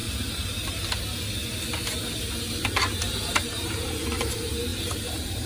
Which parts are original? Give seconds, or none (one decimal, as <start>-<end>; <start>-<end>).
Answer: 0.0-3.3